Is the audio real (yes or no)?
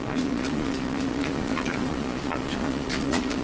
no